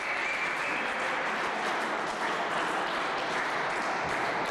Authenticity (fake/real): real